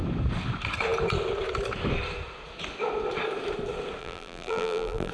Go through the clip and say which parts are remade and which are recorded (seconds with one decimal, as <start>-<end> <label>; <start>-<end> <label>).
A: 0.0-4.0 recorded; 4.0-5.1 remade